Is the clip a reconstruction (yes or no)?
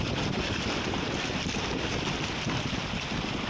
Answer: no